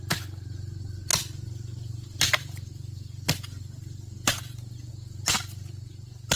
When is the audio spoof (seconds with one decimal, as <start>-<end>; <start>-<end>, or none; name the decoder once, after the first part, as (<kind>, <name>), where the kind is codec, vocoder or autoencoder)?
none